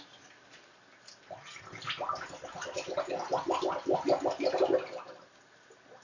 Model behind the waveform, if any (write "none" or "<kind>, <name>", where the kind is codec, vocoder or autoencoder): none